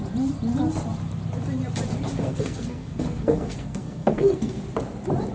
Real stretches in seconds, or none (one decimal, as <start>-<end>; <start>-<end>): 0.0-2.2; 4.6-5.3